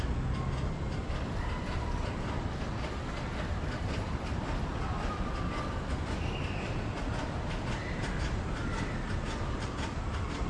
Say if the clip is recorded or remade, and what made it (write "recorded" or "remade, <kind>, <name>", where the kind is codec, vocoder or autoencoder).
recorded